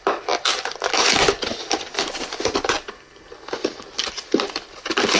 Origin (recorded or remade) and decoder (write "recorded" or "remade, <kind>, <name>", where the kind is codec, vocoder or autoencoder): recorded